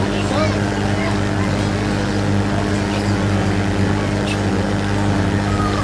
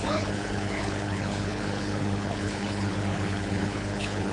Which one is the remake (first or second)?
second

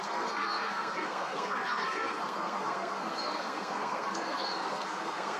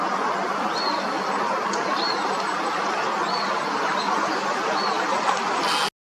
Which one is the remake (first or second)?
first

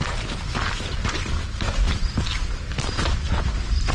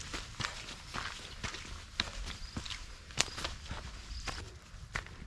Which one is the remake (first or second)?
first